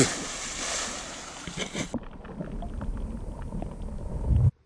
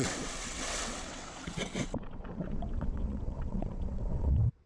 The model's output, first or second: second